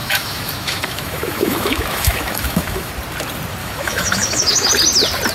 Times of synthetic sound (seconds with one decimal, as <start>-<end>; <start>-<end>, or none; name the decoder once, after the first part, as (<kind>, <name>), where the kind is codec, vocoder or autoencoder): 0.0-2.9 (autoencoder, DAC-VAE); 3.6-4.7